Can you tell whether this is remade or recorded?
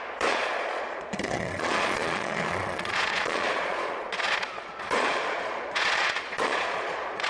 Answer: remade